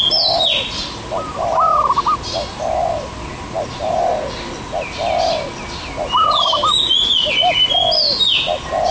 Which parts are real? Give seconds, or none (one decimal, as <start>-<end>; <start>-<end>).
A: 0.0-8.9